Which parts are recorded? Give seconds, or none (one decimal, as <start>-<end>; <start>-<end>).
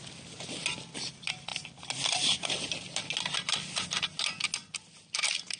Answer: 0.0-5.6